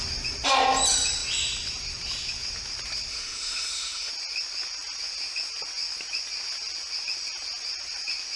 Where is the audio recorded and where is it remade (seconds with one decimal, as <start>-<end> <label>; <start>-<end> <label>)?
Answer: 0.0-3.1 recorded; 3.1-4.1 remade; 4.1-8.4 recorded